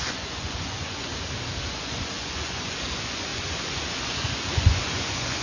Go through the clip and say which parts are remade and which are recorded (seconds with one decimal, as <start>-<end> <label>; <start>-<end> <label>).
0.0-1.1 remade; 1.1-1.6 recorded; 1.6-5.4 remade